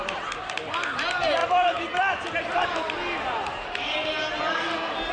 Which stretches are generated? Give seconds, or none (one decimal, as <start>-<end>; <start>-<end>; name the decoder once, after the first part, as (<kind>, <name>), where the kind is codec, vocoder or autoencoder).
none